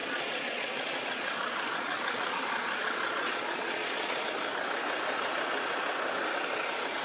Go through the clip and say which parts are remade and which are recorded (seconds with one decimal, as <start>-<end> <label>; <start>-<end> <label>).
0.0-4.2 remade; 4.2-7.0 recorded

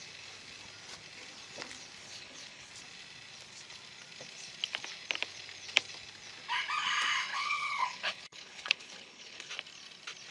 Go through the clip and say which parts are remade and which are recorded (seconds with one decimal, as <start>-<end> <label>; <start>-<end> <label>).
0.0-2.0 recorded; 2.0-2.7 remade; 2.7-7.3 recorded; 7.3-9.5 remade; 9.5-10.3 recorded

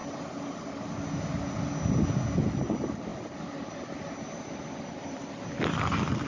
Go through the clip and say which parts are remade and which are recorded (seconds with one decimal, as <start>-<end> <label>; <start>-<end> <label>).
0.0-6.3 recorded

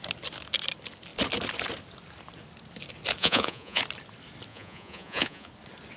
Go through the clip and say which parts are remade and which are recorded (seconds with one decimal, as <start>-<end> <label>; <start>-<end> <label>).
0.0-3.2 recorded; 3.2-3.8 remade; 3.8-4.5 recorded; 4.5-5.5 remade; 5.5-6.0 recorded

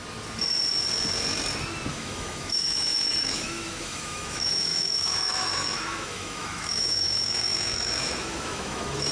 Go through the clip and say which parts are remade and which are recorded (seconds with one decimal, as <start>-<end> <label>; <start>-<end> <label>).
0.0-1.9 recorded; 1.9-9.1 remade

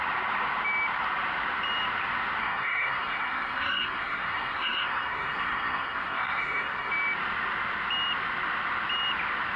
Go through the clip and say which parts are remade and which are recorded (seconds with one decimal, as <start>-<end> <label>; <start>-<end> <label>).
0.0-2.4 recorded; 2.4-6.9 remade; 6.9-9.6 recorded

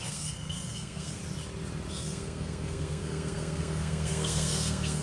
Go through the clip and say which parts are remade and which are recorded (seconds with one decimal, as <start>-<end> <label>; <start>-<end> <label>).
0.0-1.2 remade; 1.2-1.9 recorded; 1.9-5.0 remade

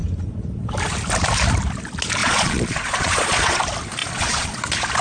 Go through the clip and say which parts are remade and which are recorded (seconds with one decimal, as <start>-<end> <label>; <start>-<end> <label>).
0.0-2.2 recorded; 2.2-3.6 remade; 3.6-4.0 recorded; 4.0-4.6 remade; 4.6-5.0 recorded